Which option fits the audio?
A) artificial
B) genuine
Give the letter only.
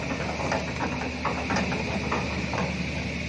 B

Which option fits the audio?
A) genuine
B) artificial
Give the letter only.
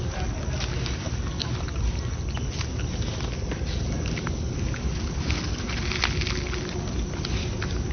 A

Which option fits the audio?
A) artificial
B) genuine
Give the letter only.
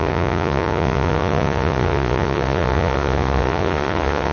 A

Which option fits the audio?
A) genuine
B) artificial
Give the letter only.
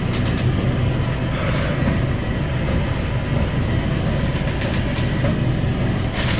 A